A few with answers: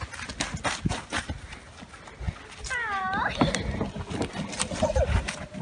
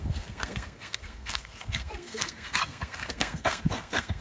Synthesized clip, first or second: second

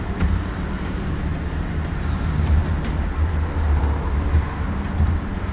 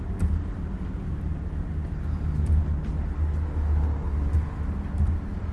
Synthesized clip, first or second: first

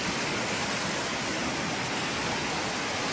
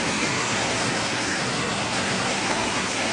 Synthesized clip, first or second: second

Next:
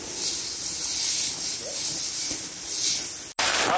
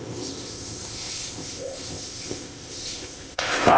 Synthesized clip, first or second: second